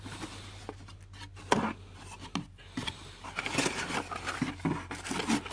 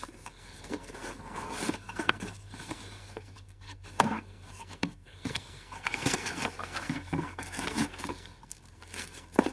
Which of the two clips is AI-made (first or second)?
second